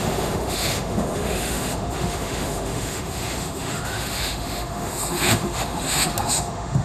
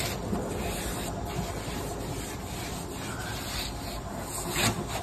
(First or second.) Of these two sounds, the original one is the second